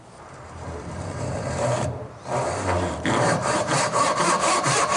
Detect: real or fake fake